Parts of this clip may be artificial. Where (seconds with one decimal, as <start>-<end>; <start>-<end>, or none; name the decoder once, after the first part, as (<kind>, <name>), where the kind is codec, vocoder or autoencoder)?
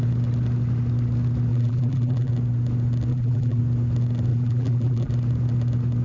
1.5-2.3 (vocoder, BigVGAN v2); 3.1-3.6; 4.3-5.1